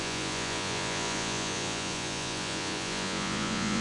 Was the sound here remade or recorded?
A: remade